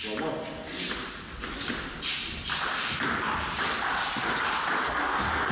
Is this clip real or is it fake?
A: real